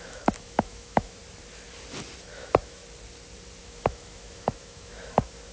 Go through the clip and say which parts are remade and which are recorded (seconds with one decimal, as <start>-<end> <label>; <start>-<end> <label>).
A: 0.0-1.2 remade; 1.2-2.3 recorded; 2.3-2.8 remade; 2.8-3.6 recorded; 3.6-5.5 remade